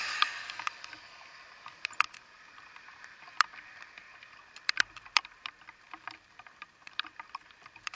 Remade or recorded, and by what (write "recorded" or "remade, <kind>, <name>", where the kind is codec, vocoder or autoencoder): remade, vocoder, BigVGAN v2